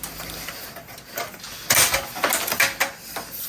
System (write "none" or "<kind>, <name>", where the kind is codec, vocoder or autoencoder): none